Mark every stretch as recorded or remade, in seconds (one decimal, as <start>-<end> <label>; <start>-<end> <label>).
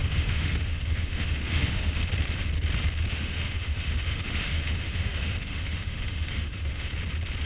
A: 0.0-2.0 remade; 2.0-3.1 recorded; 3.1-6.9 remade; 6.9-7.5 recorded